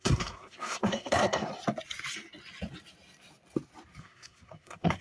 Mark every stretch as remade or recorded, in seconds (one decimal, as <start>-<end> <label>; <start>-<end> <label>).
0.0-1.5 remade; 1.5-4.0 recorded; 4.0-5.0 remade